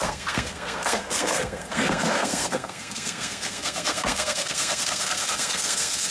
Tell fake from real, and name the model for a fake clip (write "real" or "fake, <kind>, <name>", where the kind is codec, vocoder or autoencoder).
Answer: fake, codec, SNAC